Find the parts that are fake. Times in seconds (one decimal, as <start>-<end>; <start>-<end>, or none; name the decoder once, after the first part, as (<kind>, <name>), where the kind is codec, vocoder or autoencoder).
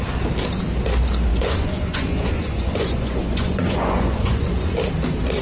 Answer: 1.3-4.5 (vocoder, Vocos)